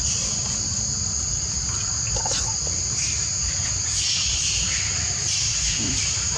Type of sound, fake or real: real